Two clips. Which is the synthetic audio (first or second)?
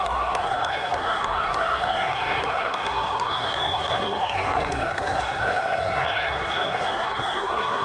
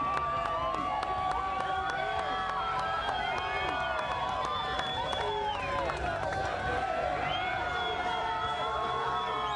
first